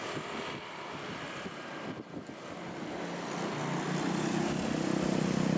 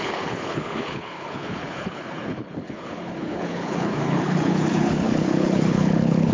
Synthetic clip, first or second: second